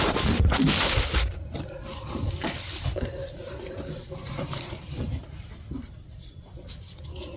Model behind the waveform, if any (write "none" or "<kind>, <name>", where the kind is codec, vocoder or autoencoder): vocoder, BigVGAN v2